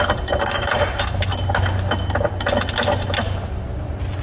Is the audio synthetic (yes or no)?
no